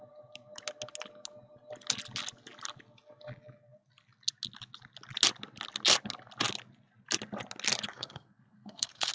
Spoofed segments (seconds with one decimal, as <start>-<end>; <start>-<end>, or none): 7.9-9.1